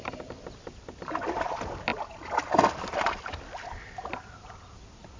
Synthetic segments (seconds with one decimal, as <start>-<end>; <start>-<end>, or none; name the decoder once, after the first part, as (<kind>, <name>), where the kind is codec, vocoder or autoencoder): none